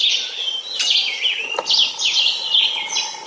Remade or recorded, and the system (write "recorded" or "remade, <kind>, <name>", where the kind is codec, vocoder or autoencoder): recorded